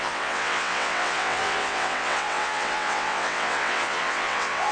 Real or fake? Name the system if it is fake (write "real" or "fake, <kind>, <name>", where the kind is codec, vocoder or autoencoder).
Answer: fake, vocoder, WaveNeXt